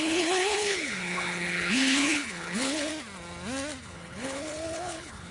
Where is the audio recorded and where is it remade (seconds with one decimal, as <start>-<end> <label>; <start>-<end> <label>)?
0.0-2.9 remade; 2.9-3.8 recorded; 3.8-5.3 remade